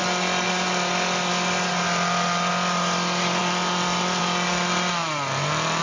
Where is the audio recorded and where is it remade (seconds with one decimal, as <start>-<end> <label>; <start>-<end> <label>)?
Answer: 0.0-5.8 recorded